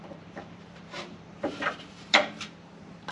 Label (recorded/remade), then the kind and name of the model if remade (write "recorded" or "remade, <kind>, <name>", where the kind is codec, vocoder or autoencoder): remade, vocoder, BigVGAN v2